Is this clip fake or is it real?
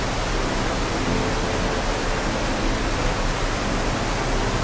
real